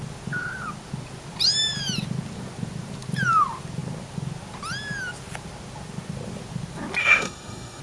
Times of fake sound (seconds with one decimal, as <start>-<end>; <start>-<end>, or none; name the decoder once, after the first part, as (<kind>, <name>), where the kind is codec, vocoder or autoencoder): 7.0-7.8 (codec, SNAC)